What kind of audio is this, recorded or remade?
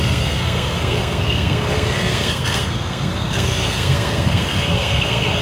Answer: remade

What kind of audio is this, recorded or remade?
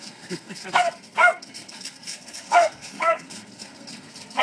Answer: remade